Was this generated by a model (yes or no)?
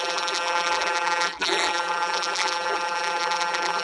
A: yes